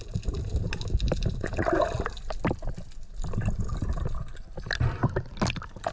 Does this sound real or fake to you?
real